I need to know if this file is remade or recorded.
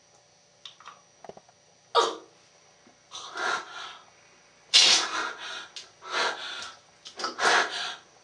recorded